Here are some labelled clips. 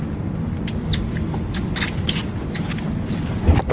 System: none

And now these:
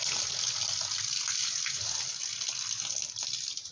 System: none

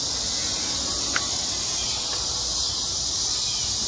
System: none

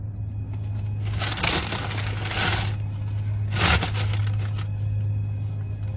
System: none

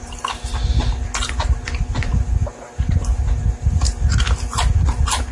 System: none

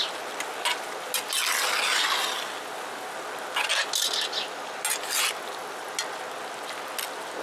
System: none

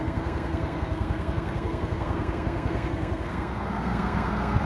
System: codec, SNAC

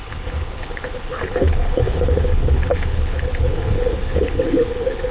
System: codec, HILCodec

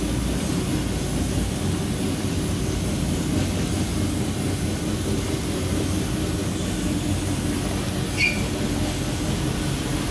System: none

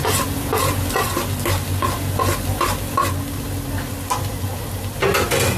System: none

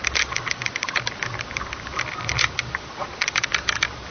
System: none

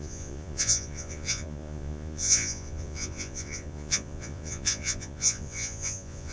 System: vocoder, Vocos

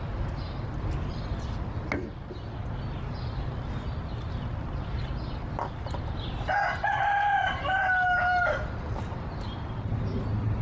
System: none